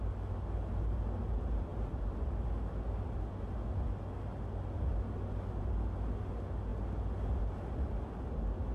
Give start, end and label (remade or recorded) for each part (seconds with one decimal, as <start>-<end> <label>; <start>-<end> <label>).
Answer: 0.0-8.7 recorded